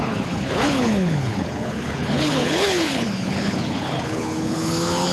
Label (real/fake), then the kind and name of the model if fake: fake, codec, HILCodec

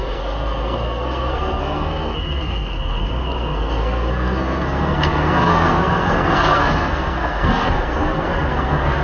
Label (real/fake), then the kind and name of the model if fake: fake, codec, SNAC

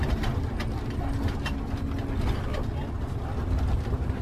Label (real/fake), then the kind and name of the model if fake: real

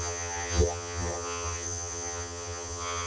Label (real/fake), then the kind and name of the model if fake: fake, vocoder, HiFi-GAN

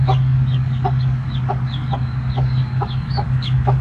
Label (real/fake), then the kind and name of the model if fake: fake, codec, DAC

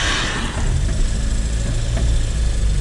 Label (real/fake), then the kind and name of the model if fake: real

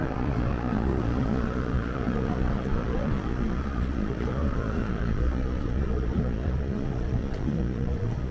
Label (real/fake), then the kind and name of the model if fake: fake, vocoder, Vocos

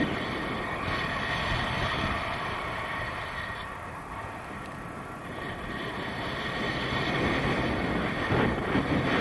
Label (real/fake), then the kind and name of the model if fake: real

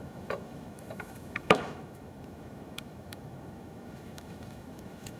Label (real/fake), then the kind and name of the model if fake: fake, autoencoder, DAC-VAE